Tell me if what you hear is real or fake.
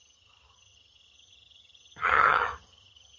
fake